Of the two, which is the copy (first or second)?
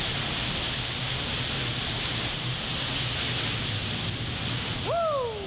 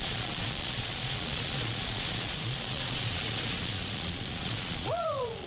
second